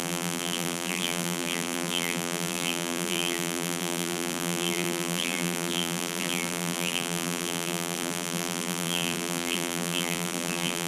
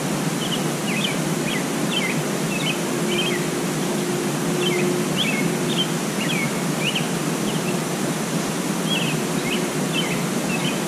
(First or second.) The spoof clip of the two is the first